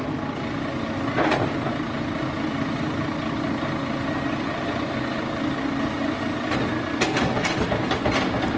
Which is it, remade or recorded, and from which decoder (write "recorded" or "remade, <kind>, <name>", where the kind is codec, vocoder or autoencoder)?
recorded